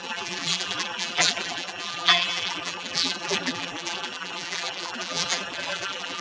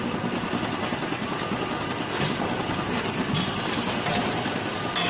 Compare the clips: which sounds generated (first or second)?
first